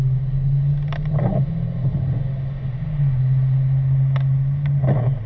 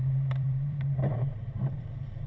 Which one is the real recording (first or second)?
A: first